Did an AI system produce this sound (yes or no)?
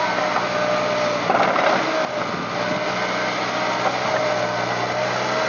no